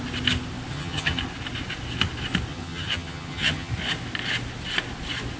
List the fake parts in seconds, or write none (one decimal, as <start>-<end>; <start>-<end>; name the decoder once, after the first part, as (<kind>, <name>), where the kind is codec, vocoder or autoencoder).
0.7-1.2 (vocoder, HiFi-GAN); 2.5-3.7